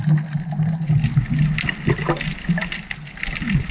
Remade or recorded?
recorded